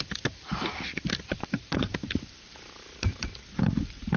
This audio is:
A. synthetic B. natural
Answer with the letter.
A